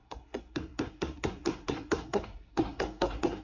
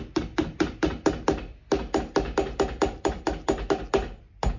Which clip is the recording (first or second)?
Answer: second